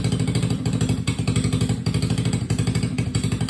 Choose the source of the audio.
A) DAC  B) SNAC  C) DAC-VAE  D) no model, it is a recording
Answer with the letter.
D